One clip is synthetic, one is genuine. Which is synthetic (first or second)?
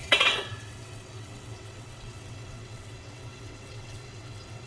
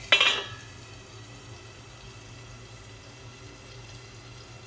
first